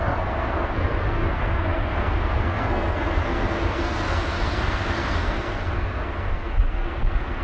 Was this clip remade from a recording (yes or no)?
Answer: yes